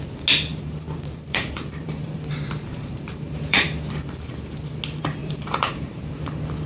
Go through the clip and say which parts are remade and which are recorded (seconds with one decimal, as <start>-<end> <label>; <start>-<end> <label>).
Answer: 0.0-0.5 recorded; 0.5-4.3 remade; 4.3-5.2 recorded; 5.2-6.0 remade; 6.0-6.7 recorded